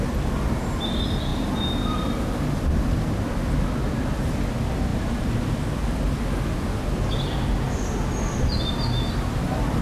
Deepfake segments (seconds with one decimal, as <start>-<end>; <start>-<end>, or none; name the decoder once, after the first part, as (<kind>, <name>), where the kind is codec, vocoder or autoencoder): none